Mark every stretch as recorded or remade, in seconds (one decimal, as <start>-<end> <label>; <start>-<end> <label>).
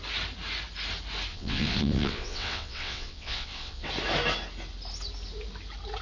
0.0-1.3 recorded; 1.3-3.9 remade; 3.9-6.0 recorded